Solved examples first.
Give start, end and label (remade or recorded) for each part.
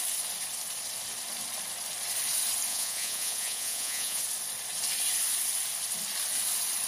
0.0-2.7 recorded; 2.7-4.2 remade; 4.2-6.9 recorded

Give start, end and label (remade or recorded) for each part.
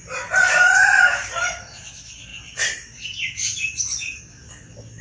0.0-0.8 recorded; 0.8-1.8 remade; 1.8-2.3 recorded; 2.3-4.2 remade; 4.2-5.0 recorded